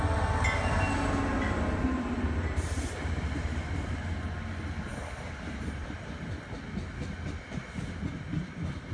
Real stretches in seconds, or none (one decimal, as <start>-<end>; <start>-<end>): 0.0-8.9